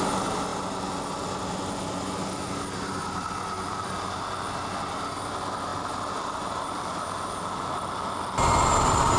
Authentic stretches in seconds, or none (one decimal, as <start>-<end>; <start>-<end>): 0.0-9.2